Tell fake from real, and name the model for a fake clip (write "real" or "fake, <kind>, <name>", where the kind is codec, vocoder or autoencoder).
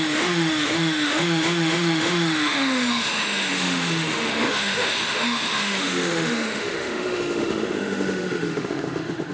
fake, autoencoder, DAC-VAE